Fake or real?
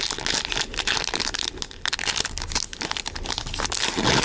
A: real